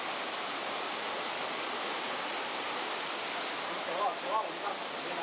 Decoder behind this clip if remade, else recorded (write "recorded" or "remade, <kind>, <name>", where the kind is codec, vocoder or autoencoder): recorded